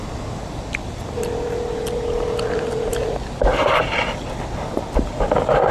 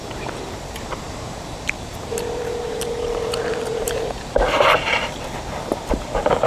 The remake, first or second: second